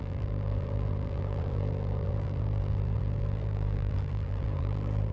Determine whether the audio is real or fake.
fake